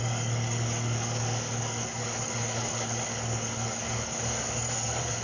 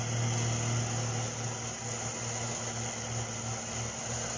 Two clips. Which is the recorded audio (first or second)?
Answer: second